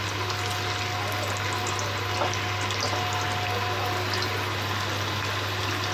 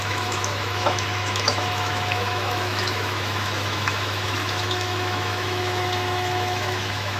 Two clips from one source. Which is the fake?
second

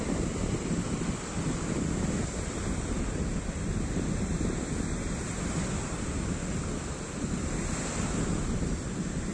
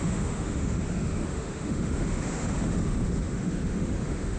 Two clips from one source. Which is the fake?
second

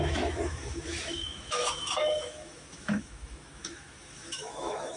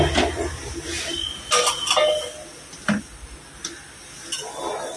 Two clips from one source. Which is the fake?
first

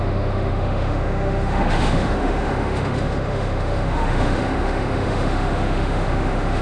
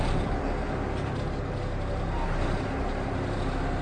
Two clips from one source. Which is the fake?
first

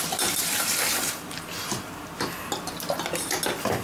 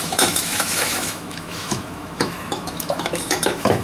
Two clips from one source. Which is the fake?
second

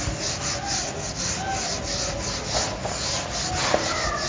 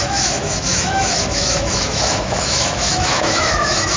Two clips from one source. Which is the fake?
second